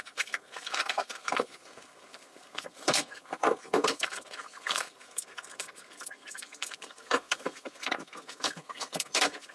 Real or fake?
fake